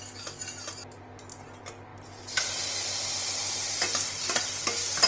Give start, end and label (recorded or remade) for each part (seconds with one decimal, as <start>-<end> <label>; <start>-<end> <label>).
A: 0.0-5.1 recorded